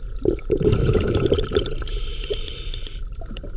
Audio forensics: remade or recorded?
remade